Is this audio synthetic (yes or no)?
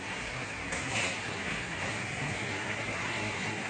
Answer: yes